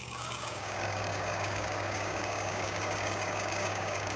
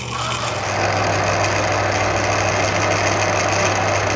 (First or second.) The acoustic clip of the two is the second